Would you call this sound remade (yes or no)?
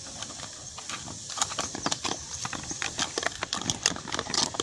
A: no